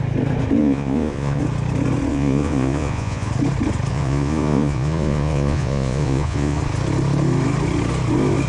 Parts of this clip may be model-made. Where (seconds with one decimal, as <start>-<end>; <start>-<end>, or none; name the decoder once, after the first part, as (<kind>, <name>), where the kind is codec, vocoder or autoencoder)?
0.6-1.4 (vocoder, Vocos); 2.1-3.3; 3.9-6.6